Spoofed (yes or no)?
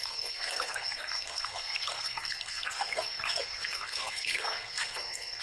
yes